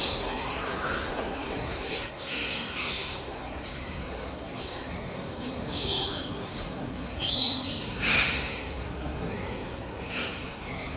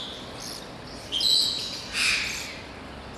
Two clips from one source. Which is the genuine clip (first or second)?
second